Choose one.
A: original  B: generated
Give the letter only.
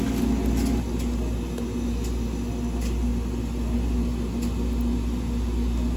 A